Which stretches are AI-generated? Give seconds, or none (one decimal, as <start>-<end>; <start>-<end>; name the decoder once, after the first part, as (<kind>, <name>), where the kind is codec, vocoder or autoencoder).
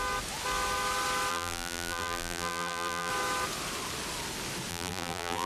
1.3-3.1 (vocoder, BigVGAN v2); 4.7-5.5